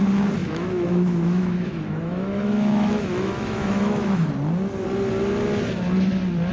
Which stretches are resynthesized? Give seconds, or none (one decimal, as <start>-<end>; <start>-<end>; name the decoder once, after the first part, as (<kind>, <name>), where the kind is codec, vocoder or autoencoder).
0.4-4.3 (autoencoder, DAC-VAE)

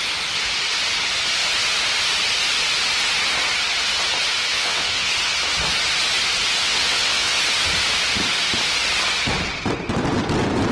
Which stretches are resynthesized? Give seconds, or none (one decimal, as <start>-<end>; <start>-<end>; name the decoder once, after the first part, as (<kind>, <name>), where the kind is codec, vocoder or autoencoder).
4.5-5.1 (vocoder, WaveNeXt); 6.6-7.4

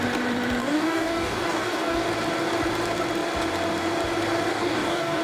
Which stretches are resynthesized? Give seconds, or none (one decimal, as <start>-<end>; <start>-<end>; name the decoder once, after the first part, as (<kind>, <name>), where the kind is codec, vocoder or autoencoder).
0.6-2.0 (codec, DAC); 4.5-5.2

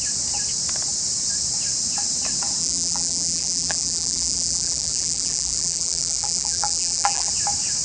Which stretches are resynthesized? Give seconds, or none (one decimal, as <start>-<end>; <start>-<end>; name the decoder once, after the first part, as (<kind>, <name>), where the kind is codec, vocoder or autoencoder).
2.6-7.3 (vocoder, BigVGAN v2)

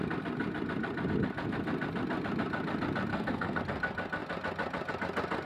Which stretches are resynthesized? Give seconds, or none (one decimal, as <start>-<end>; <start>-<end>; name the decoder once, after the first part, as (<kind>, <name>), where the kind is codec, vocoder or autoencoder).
3.1-3.6 (codec, SNAC)

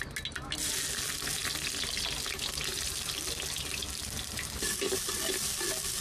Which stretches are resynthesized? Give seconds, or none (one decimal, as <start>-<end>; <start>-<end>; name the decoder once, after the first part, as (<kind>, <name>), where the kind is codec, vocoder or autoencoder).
none